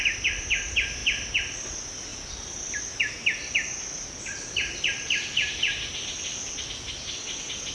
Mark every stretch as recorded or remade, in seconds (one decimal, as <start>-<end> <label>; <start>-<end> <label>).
0.0-7.7 recorded